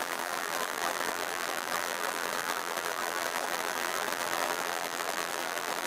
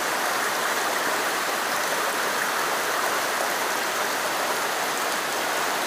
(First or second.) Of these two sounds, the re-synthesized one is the first